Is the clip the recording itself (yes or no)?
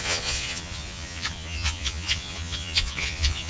no